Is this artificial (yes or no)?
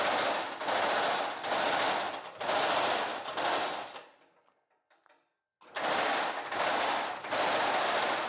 no